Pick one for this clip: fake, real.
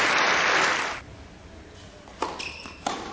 real